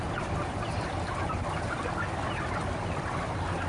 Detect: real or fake real